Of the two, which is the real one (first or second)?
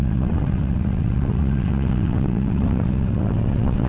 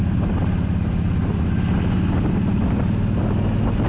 second